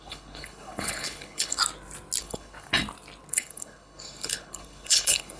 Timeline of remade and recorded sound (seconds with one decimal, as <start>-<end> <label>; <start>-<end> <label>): 0.0-1.6 remade; 1.6-2.2 recorded; 2.2-2.7 remade; 2.7-3.3 recorded; 3.3-5.4 remade